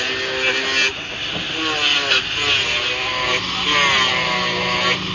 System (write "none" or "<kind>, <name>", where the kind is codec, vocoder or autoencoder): none